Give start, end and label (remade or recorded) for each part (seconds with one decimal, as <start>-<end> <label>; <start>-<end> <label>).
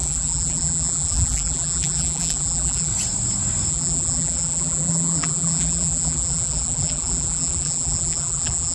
0.0-2.9 remade; 2.9-3.7 recorded; 3.7-8.7 remade